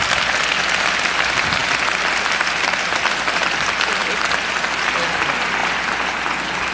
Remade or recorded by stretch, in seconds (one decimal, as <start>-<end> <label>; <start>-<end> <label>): 0.0-6.7 recorded